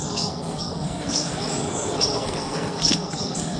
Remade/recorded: remade